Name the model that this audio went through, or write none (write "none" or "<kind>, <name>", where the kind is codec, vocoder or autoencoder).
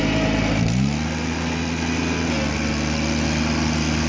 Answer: none